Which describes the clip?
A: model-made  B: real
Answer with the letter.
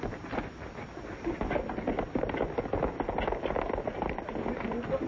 B